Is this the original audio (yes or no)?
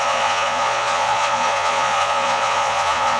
no